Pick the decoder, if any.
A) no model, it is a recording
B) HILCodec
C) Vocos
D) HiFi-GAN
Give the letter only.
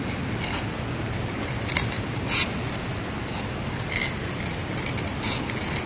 A